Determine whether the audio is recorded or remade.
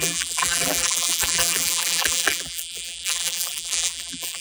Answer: remade